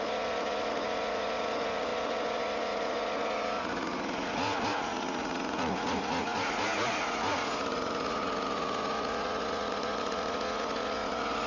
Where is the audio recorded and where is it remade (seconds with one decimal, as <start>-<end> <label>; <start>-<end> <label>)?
0.0-11.5 remade